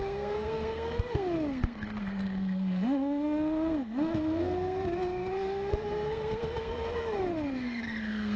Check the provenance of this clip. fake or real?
fake